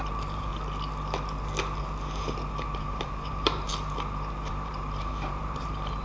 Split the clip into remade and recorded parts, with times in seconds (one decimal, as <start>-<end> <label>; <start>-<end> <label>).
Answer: 0.0-0.5 remade; 0.5-2.8 recorded; 2.8-3.7 remade; 3.7-4.5 recorded; 4.5-6.0 remade